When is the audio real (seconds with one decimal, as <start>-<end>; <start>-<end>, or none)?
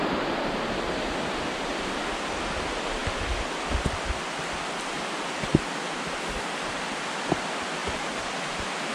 0.0-8.9